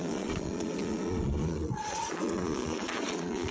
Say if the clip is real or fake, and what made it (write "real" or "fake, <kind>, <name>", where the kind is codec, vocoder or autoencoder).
fake, vocoder, Vocos